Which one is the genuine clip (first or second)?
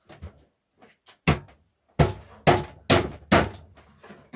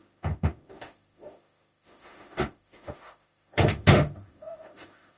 first